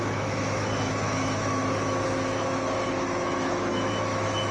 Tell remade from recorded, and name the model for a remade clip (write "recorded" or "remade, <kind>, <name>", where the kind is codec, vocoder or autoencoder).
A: remade, autoencoder, DAC-VAE